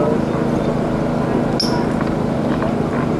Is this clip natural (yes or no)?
yes